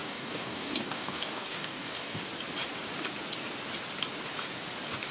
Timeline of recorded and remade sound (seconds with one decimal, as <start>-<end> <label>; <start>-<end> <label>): 0.0-2.2 remade; 2.2-5.1 recorded